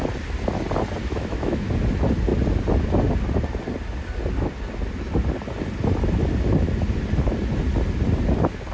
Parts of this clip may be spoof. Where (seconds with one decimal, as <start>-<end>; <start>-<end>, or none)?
1.0-1.7